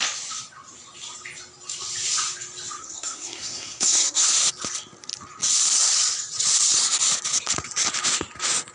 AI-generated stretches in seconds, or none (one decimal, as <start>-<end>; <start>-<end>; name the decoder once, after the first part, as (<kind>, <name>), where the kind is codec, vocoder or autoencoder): 2.8-4.3 (codec, SNAC)